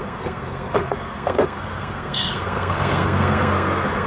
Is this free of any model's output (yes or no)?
no